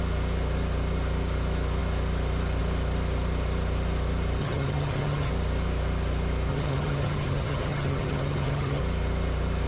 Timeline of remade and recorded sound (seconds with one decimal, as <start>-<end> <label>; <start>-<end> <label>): 0.0-4.4 recorded; 4.4-5.3 remade; 5.3-6.5 recorded; 6.5-8.8 remade; 8.8-9.7 recorded

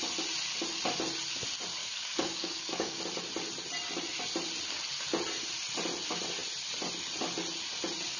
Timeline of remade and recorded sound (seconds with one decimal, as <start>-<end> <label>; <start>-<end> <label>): 0.0-1.8 recorded; 1.8-3.0 remade; 3.0-8.2 recorded